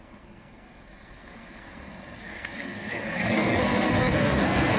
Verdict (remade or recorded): remade